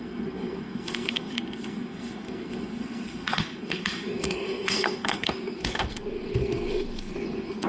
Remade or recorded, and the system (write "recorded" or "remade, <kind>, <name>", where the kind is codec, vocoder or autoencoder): remade, codec, SNAC